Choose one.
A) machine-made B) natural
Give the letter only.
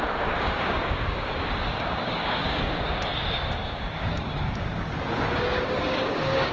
A